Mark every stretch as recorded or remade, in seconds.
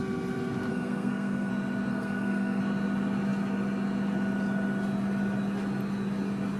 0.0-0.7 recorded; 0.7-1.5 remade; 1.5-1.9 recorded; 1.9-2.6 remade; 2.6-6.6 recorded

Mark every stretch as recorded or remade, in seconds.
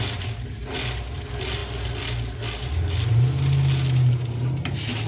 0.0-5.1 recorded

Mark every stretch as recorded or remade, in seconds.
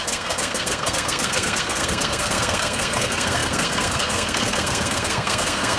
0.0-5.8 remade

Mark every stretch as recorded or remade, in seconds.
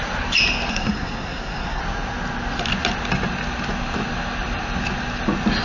0.0-0.7 recorded; 0.7-1.8 remade; 1.8-5.6 recorded